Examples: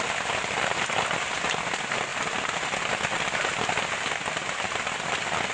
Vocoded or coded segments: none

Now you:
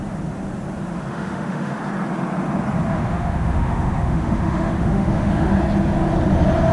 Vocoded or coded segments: 1.1-1.8 (autoencoder, DAC-VAE); 2.9-5.5

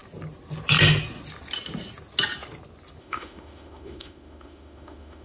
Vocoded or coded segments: 3.0-5.2 (autoencoder, DAC-VAE)

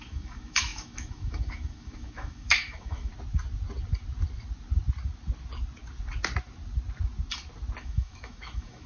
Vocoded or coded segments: 0.0-3.1 (autoencoder, DAC-VAE); 7.8-8.9

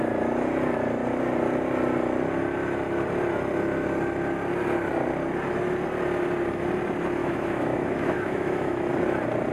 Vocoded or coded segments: 7.2-8.9 (autoencoder, DAC-VAE)